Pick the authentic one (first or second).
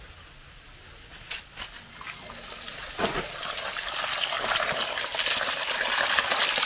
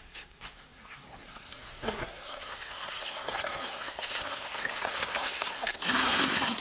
first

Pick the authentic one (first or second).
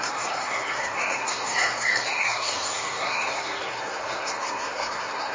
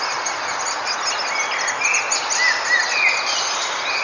second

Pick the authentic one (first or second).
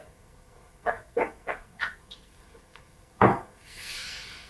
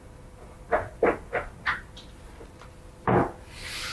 second